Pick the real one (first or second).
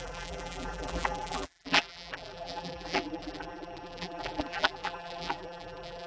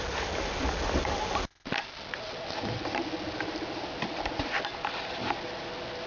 second